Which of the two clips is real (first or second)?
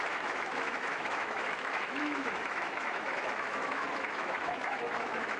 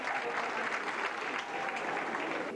second